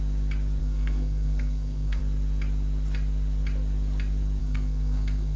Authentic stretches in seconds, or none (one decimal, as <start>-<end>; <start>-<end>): 0.0-0.6; 2.0-4.4